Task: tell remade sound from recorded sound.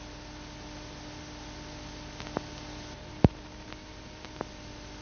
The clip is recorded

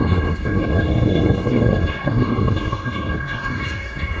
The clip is remade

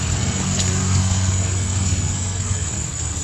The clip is remade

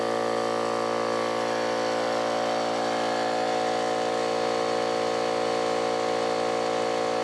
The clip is recorded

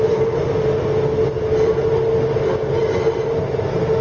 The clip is recorded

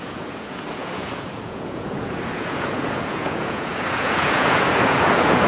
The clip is remade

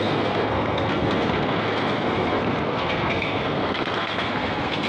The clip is remade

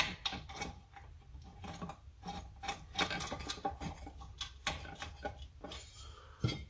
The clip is recorded